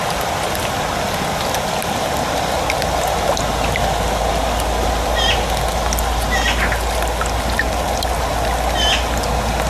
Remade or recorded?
recorded